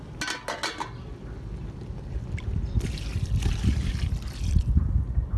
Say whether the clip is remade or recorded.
recorded